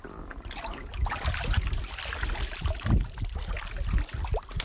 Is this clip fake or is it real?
real